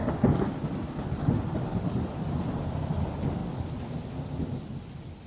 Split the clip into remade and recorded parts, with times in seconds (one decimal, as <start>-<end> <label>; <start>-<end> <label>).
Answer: 0.0-5.3 recorded